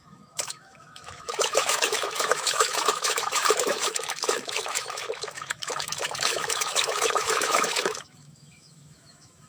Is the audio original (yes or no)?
no